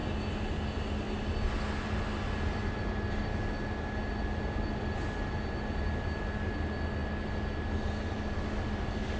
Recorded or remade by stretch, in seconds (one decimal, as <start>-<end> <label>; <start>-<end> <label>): 0.0-9.2 recorded